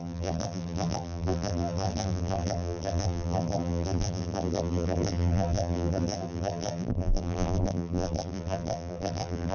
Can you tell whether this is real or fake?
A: fake